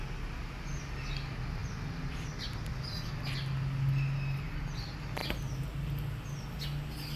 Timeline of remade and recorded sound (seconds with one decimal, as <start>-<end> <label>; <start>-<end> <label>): 0.0-7.2 recorded